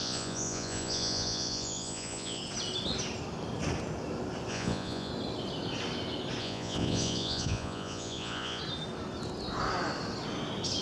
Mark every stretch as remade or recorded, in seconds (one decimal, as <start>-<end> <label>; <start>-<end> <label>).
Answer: 0.0-2.4 remade; 2.4-4.5 recorded; 4.5-5.1 remade; 5.1-6.4 recorded; 6.4-8.6 remade; 8.6-10.8 recorded